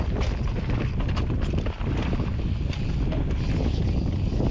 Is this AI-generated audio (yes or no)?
no